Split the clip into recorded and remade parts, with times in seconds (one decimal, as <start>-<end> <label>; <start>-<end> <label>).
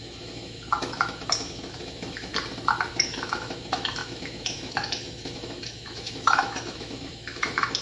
0.0-2.3 remade; 2.3-2.9 recorded; 2.9-7.8 remade